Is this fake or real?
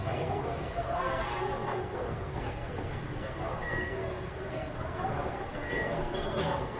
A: fake